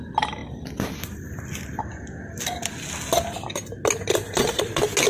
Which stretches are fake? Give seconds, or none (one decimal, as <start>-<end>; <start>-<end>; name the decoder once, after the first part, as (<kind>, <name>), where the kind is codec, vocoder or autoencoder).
4.1-4.6 (vocoder, BigVGAN v2)